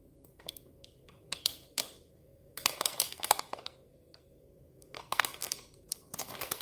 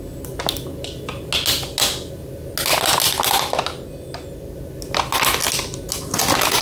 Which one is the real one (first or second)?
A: second